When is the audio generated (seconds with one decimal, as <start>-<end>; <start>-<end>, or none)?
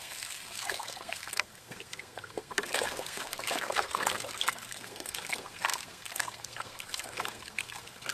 0.0-8.1